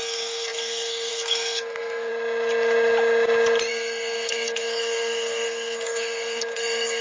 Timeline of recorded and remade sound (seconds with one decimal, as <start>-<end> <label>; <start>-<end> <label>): 0.0-2.1 remade; 2.1-3.7 recorded; 3.7-7.0 remade